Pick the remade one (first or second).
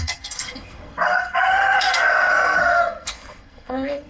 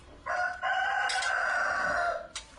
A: first